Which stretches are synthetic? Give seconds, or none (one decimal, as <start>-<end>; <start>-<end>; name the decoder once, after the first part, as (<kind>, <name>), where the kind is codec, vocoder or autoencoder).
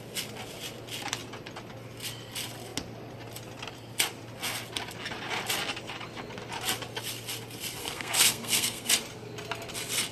7.8-8.9 (codec, SNAC)